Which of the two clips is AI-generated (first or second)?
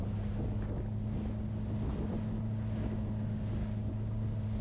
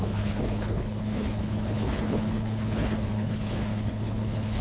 second